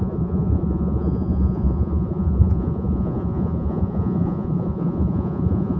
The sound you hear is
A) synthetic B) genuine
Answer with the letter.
A